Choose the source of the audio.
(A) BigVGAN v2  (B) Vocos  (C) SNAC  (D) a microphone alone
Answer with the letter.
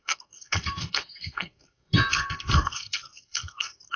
C